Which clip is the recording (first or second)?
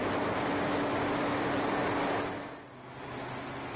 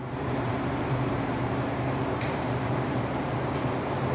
first